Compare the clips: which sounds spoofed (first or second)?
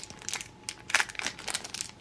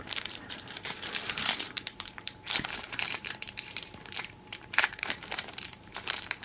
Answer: second